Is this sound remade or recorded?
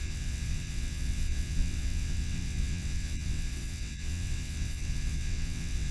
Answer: remade